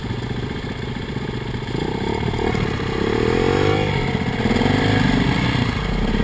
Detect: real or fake real